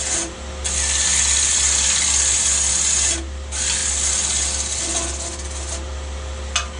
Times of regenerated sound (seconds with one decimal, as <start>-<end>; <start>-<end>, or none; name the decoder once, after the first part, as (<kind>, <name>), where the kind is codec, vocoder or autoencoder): none